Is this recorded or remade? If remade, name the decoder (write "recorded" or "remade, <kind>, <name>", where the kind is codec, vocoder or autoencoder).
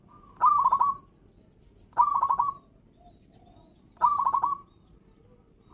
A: recorded